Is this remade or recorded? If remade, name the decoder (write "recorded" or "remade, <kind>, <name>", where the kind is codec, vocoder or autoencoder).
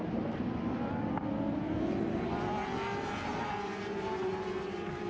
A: recorded